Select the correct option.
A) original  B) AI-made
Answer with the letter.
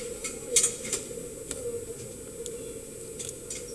A